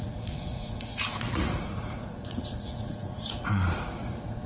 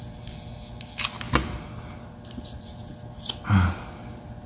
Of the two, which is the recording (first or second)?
second